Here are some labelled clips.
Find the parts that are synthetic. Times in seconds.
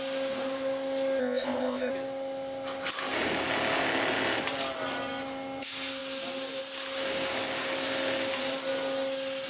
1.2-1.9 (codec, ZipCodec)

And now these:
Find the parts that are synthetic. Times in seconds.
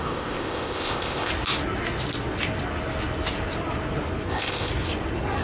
0.0-1.3 (codec, ZipCodec); 4.3-4.7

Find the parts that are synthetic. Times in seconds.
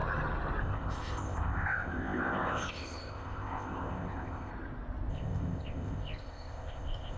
0.6-4.5 (codec, ZipCodec); 5.1-7.2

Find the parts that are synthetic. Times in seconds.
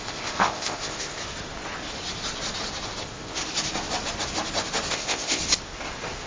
0.0-1.2 (codec, ZipCodec); 3.0-3.4; 4.9-5.4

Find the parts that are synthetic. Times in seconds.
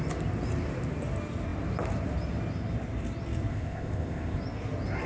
3.5-4.4 (codec, ZipCodec)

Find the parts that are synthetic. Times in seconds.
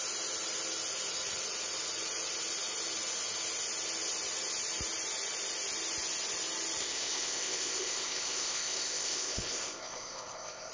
6.8-10.7 (codec, ZipCodec)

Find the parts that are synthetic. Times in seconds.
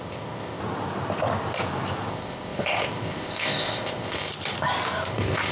0.0-0.6 (codec, ZipCodec); 2.1-4.3; 5.1-5.5